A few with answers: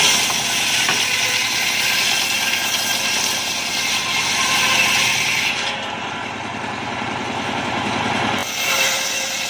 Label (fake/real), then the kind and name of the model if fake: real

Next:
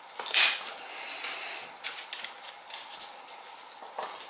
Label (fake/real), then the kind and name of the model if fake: real